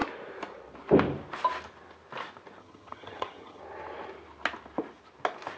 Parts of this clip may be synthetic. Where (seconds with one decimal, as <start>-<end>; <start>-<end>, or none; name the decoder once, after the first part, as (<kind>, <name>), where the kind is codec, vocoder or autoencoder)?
2.6-3.6 (vocoder, HiFi-GAN)